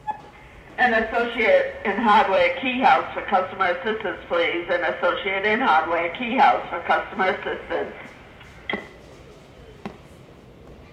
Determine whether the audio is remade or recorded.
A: remade